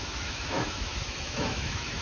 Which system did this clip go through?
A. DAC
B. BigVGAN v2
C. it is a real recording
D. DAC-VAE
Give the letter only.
D